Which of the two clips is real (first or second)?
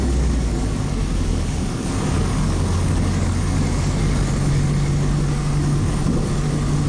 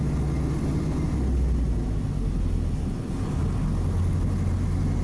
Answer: second